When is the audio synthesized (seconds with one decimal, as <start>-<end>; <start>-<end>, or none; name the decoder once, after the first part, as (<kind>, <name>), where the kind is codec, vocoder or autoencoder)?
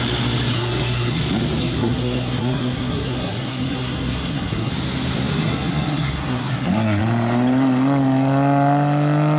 0.5-1.2 (codec, SNAC); 1.6-4.7; 5.3-7.0